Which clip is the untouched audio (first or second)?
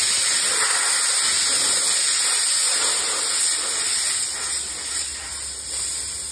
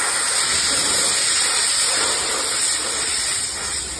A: first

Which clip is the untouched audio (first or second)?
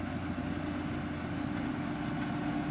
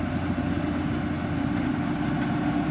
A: first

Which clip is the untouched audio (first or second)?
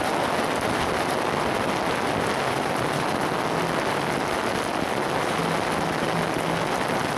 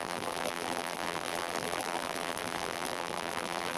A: first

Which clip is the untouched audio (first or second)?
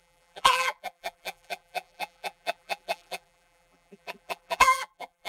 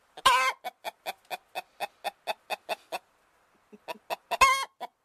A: second